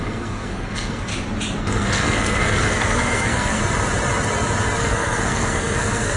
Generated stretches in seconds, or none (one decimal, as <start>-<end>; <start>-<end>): 0.0-1.1; 1.6-3.6; 4.8-6.2